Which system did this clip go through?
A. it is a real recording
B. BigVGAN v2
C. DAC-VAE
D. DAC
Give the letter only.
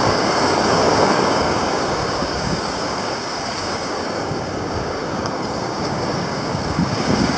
D